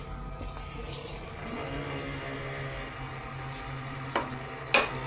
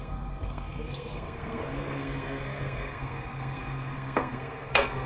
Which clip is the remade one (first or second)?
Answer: second